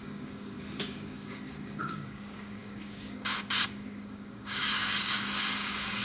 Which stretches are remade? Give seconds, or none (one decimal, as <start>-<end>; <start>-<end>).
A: 0.0-6.0